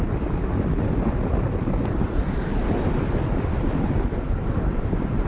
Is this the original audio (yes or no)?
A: yes